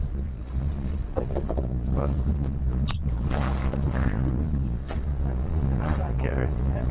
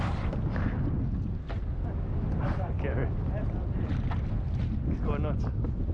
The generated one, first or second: first